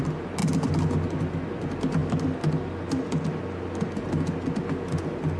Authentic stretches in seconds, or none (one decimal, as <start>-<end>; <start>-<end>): 0.0-5.4